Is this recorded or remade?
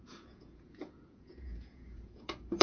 remade